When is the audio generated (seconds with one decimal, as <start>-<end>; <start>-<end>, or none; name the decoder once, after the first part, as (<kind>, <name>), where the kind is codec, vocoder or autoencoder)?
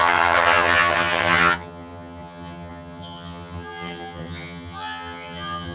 0.0-5.7 (vocoder, HiFi-GAN)